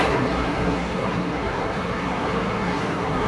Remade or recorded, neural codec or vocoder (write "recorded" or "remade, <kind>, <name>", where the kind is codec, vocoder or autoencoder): remade, codec, SNAC